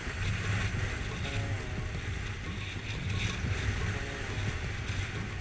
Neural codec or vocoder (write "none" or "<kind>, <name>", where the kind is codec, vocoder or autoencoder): none